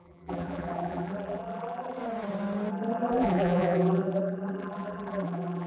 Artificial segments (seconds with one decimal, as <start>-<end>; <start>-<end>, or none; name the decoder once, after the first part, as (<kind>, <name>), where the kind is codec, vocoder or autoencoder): 0.0-2.0 (vocoder, BigVGAN v2); 2.7-5.7